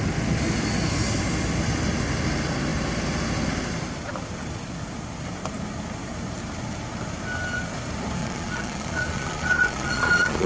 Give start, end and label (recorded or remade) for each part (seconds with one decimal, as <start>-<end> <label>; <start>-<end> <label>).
0.0-8.2 recorded; 8.2-10.5 remade